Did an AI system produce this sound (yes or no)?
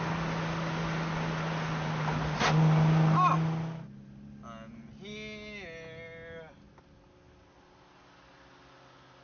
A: no